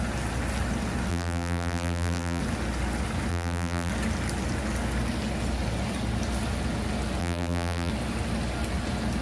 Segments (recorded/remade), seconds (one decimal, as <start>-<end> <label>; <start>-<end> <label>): 0.0-1.1 recorded; 1.1-2.4 remade; 2.4-3.3 recorded; 3.3-3.9 remade; 3.9-7.2 recorded; 7.2-7.9 remade; 7.9-9.2 recorded